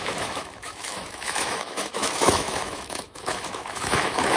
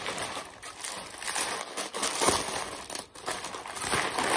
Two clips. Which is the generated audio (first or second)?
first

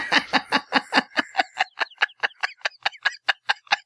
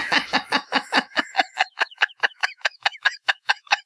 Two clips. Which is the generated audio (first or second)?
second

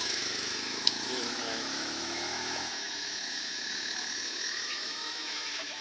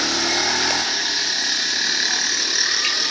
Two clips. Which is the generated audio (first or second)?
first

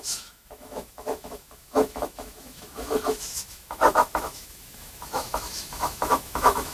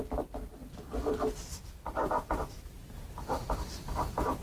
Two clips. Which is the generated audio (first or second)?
first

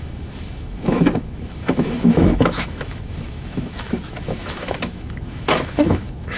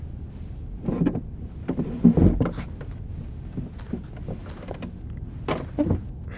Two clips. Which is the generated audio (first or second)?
first